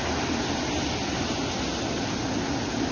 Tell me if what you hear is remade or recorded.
recorded